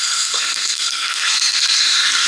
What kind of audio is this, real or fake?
fake